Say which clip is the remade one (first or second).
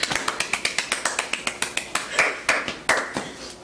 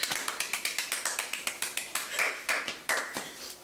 second